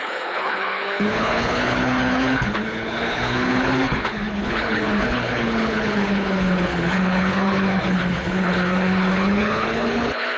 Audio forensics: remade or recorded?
remade